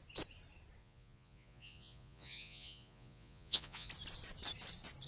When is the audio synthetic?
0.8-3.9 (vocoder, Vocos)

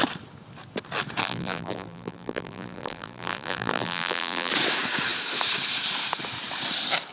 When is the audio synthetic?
1.2-4.5 (vocoder, BigVGAN v2)

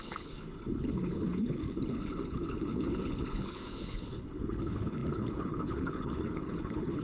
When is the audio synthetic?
0.0-7.0 (codec, HILCodec)

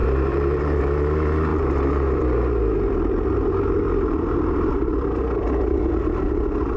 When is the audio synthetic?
0.0-0.8 (vocoder, BigVGAN v2); 1.5-4.7